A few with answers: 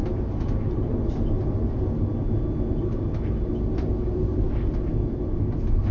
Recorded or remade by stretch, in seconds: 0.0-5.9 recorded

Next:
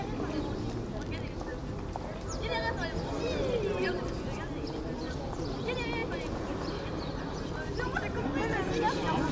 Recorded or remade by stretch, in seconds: 0.0-9.3 recorded

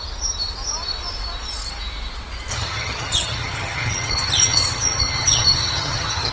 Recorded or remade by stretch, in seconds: 0.0-2.5 recorded; 2.5-6.3 remade

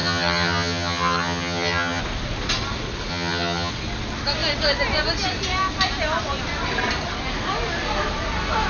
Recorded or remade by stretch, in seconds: 0.0-2.0 remade; 2.0-3.1 recorded; 3.1-3.7 remade; 3.7-8.7 recorded

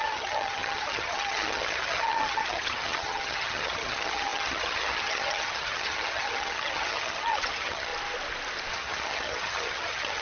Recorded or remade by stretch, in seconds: 0.0-7.9 remade; 7.9-8.7 recorded; 8.7-10.2 remade

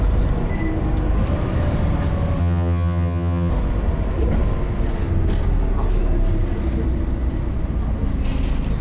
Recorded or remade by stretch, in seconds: 0.0-2.4 recorded; 2.4-3.5 remade; 3.5-8.8 recorded

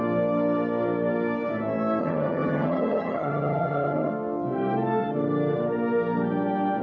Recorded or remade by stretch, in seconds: 0.0-2.0 recorded; 2.0-4.1 remade; 4.1-6.8 recorded